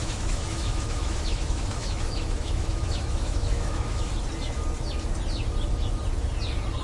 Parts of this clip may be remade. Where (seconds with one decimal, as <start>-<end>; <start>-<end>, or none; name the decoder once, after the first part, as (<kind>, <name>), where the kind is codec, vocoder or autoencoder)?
0.0-4.1 (autoencoder, DAC-VAE)